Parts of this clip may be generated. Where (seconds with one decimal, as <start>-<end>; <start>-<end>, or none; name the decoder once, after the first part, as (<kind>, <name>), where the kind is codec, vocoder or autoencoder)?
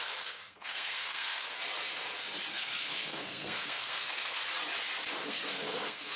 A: 0.0-1.5 (codec, SNAC); 2.5-4.4; 5.3-6.2